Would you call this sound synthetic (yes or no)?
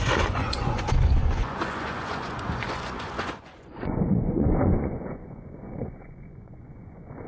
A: yes